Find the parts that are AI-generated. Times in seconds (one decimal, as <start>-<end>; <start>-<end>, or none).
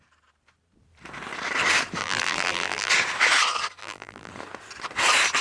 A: 2.0-2.9; 3.8-4.3